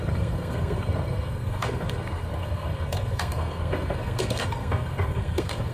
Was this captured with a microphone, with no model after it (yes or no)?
no